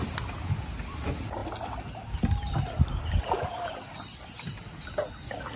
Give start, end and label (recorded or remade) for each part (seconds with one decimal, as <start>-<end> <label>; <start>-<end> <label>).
0.0-5.6 recorded